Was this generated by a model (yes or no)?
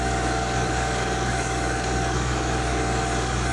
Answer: yes